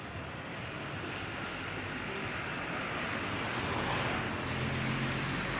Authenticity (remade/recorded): recorded